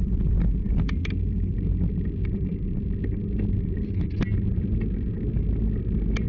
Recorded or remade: recorded